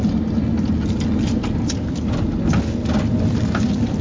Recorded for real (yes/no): yes